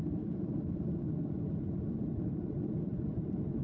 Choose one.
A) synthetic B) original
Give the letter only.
B